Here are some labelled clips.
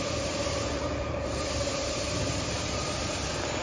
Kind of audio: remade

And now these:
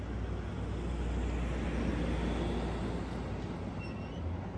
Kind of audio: recorded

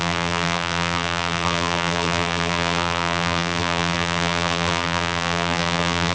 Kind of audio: remade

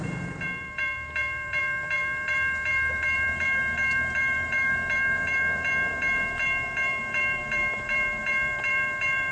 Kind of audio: remade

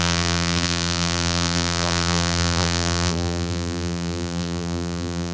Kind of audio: remade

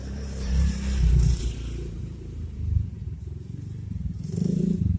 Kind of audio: remade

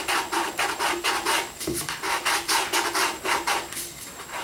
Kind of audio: recorded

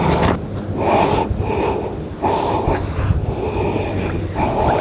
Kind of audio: remade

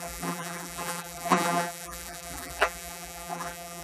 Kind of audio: remade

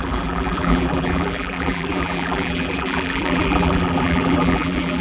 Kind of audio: remade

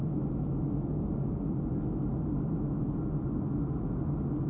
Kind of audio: recorded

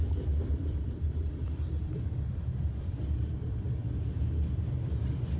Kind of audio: remade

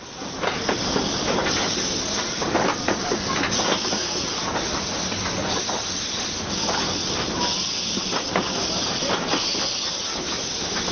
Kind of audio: recorded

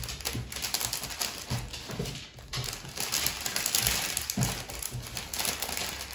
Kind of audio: recorded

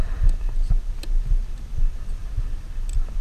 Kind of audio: recorded